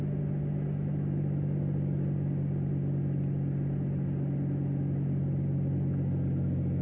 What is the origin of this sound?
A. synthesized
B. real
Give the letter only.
B